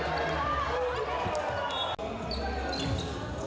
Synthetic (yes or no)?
no